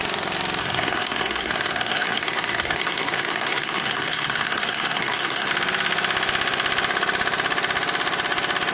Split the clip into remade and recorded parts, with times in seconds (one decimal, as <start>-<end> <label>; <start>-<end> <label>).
0.0-0.6 recorded; 0.6-5.5 remade; 5.5-8.7 recorded